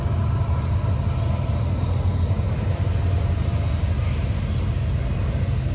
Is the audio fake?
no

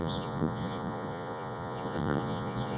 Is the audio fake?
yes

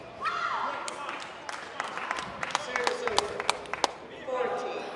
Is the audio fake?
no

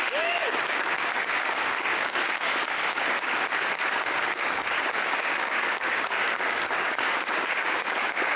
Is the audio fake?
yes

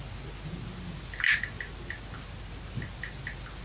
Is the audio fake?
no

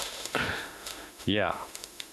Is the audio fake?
yes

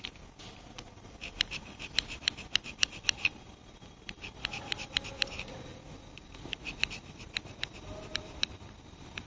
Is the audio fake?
no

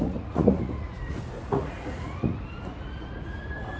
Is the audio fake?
yes